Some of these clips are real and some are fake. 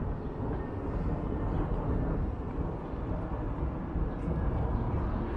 real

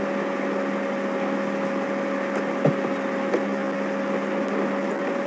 real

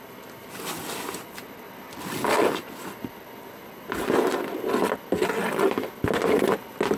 real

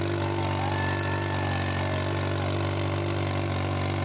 real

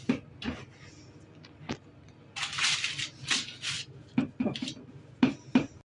real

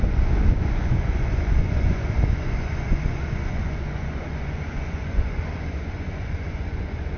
fake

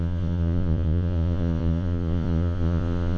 fake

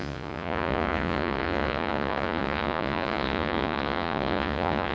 fake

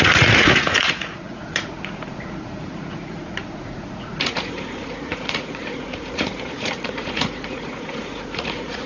fake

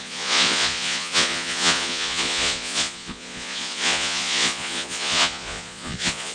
fake